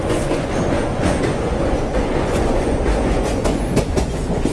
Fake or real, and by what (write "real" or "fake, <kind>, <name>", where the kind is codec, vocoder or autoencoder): fake, vocoder, Vocos